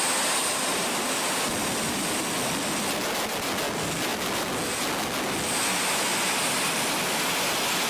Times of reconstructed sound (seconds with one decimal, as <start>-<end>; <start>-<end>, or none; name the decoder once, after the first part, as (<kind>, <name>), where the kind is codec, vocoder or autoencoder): 0.4-2.2 (vocoder, BigVGAN v2)